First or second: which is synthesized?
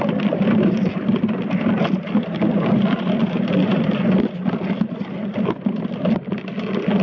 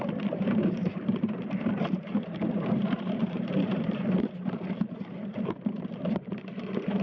second